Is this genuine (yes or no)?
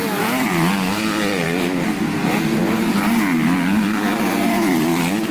yes